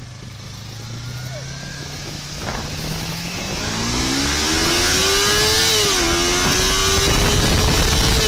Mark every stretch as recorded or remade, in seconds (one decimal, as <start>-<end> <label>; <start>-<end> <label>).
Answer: 0.0-1.7 recorded; 1.7-3.4 remade; 3.4-8.3 recorded